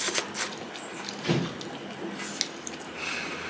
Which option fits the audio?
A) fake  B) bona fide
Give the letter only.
B